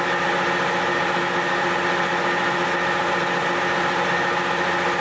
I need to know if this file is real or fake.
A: real